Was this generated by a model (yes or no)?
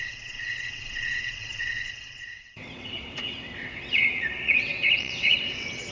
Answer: yes